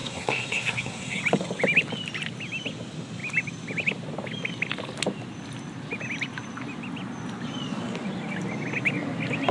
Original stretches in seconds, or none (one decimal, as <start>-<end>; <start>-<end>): 1.2-9.5